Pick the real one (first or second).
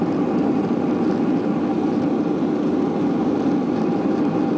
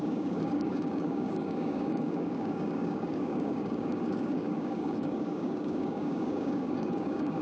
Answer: first